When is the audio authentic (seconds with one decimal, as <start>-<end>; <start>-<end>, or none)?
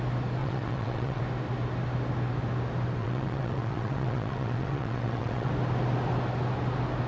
0.0-0.4; 1.2-3.0; 5.5-7.1